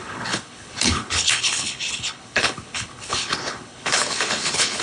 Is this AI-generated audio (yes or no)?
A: yes